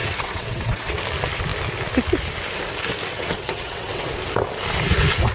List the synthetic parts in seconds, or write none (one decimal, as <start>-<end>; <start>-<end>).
0.0-1.0; 3.1-4.1